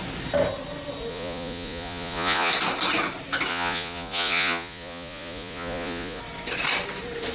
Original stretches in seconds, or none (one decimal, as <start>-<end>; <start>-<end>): 0.0-1.1; 2.5-3.5; 6.2-7.3